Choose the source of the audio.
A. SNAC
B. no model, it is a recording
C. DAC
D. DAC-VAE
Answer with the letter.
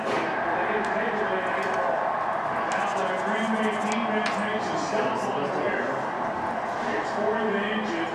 B